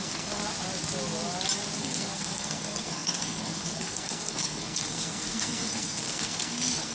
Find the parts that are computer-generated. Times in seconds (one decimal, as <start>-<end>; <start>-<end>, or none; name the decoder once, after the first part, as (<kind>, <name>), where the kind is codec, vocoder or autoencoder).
0.0-0.4 (codec, SNAC); 1.8-6.9